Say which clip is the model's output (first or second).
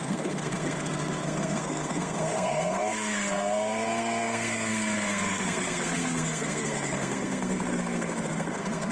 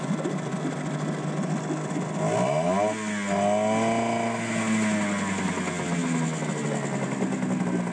first